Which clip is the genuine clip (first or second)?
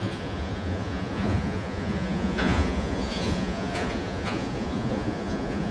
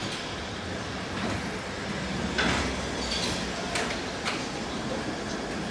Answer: second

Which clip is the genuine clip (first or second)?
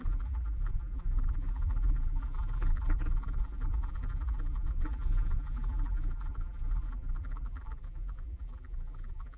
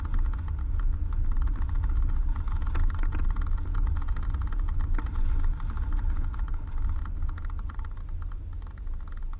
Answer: second